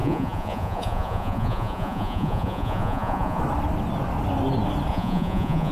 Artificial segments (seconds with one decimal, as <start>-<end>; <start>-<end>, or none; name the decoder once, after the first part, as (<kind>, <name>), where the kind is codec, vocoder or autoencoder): 0.0-3.4 (vocoder, Vocos); 4.9-5.7